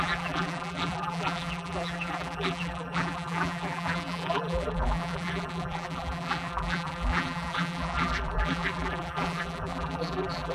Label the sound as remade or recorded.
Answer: remade